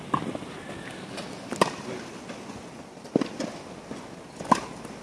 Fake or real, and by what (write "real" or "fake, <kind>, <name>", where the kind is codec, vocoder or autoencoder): real